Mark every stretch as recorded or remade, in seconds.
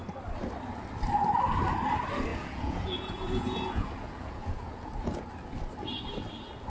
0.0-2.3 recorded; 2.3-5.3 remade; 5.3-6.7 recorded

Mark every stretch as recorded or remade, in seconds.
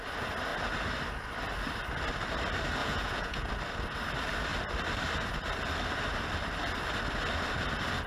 0.0-2.8 recorded; 2.8-3.5 remade; 3.5-8.1 recorded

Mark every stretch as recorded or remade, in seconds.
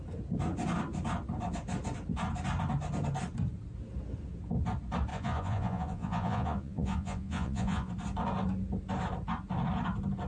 0.0-5.1 recorded; 5.1-7.9 remade; 7.9-10.3 recorded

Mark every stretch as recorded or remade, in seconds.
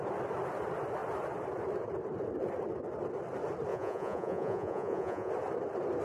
0.0-3.7 recorded; 3.7-5.3 remade; 5.3-6.0 recorded